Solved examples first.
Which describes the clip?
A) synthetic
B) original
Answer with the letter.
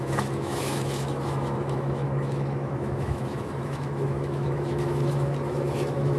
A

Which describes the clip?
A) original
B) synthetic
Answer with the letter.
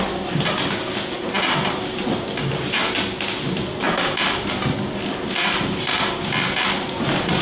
A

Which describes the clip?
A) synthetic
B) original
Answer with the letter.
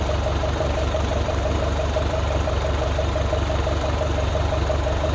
A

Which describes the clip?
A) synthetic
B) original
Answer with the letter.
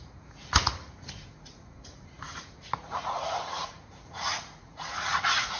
A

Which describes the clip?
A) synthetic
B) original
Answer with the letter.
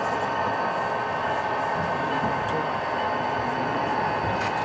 B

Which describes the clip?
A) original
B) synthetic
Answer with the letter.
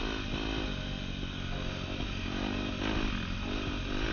A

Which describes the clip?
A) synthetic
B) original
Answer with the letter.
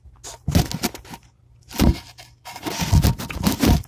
B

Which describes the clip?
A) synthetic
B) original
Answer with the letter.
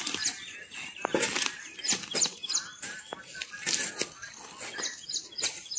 B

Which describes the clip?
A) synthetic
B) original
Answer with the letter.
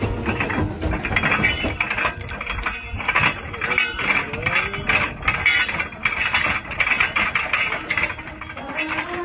B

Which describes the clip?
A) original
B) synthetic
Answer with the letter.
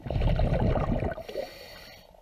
A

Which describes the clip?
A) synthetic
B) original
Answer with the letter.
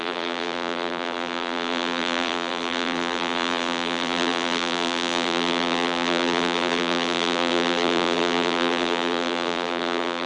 A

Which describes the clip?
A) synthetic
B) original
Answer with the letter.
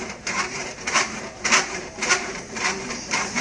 A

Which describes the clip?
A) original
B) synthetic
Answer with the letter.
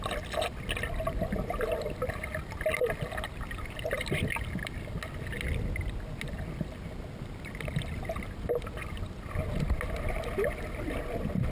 A